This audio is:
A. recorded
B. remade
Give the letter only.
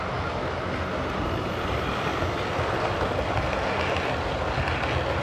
A